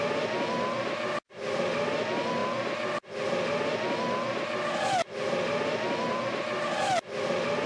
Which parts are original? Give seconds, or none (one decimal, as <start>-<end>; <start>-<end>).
0.0-7.7